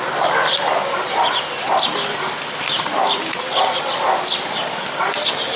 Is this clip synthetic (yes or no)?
yes